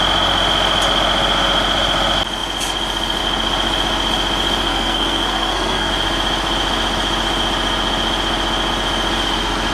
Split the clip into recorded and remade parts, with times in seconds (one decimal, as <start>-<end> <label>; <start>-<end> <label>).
0.0-4.7 recorded; 4.7-5.9 remade; 5.9-9.7 recorded